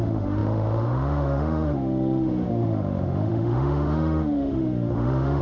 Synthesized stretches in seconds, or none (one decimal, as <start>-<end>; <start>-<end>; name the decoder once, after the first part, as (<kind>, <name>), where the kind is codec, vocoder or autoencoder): 0.0-5.4 (autoencoder, DAC-VAE)